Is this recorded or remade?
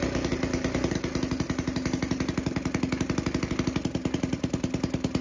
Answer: recorded